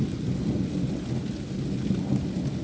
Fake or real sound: real